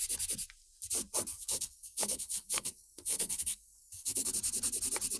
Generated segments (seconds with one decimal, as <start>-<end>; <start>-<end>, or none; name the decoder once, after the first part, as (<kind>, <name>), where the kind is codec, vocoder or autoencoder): 1.3-4.3 (codec, SNAC)